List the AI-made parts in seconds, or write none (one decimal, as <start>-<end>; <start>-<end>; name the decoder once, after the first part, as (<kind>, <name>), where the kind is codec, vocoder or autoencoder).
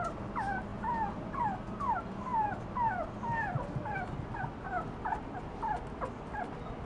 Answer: none